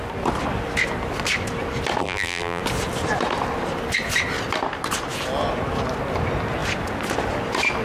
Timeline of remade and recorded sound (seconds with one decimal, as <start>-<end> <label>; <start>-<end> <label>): 0.0-2.0 recorded; 2.0-2.6 remade; 2.6-7.8 recorded